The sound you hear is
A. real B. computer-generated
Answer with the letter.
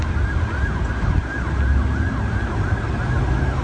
A